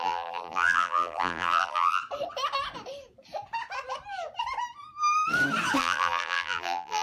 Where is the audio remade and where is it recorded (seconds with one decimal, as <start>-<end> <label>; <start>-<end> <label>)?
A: 0.0-2.0 remade; 2.0-5.8 recorded; 5.8-7.0 remade

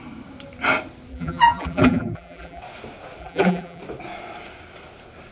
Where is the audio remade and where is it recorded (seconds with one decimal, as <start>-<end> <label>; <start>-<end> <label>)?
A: 0.0-1.1 recorded; 1.1-2.6 remade; 2.6-3.2 recorded; 3.2-3.8 remade; 3.8-5.3 recorded